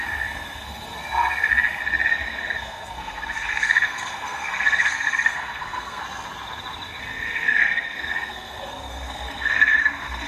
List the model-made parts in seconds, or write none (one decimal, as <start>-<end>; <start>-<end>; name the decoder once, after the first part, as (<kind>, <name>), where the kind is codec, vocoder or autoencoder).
0.0-1.5 (codec, SNAC); 2.1-6.0; 7.0-10.3